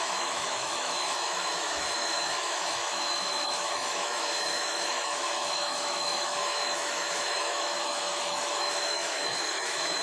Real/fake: fake